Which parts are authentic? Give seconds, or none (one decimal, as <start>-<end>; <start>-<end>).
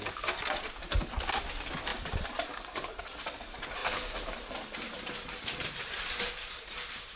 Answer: 0.0-1.9; 3.0-3.8